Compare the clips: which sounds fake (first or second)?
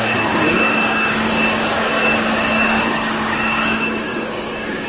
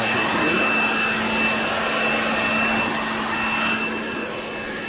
first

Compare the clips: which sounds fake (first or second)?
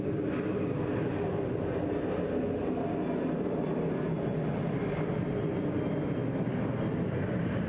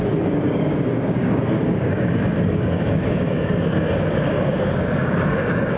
second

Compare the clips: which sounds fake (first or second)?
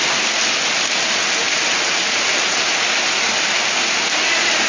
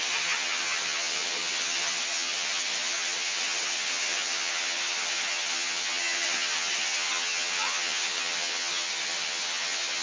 second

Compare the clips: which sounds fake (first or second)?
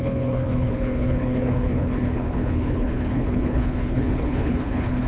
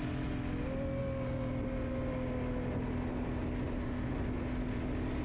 first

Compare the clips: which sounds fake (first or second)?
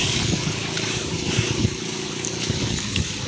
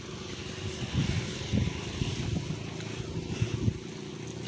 first